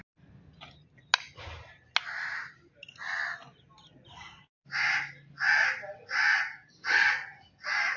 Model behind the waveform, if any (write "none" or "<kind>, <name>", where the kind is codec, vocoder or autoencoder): none